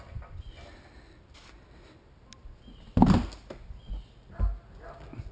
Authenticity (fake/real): real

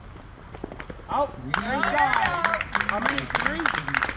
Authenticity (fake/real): real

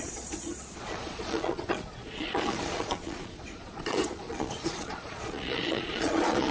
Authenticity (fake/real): fake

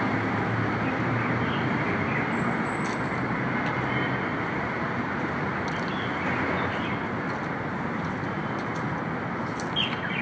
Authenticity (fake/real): real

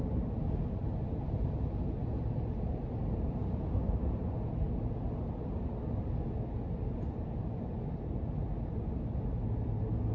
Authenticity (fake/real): real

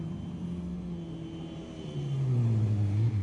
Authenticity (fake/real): real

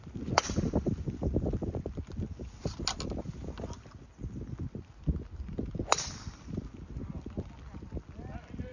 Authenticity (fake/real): real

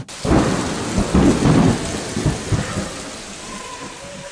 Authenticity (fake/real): real